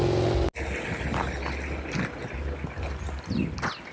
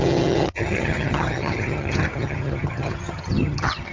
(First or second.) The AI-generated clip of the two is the second